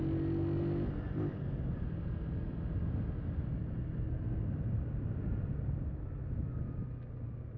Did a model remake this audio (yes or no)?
no